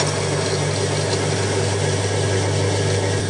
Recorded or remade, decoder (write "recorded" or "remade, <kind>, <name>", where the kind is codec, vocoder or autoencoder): recorded